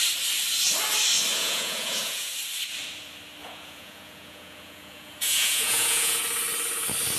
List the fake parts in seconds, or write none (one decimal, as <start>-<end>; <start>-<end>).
1.3-2.3; 3.4-6.2